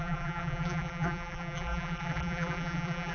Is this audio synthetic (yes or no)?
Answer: yes